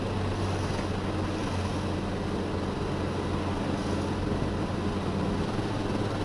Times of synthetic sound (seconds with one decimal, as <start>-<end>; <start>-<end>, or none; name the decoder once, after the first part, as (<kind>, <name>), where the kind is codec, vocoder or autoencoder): none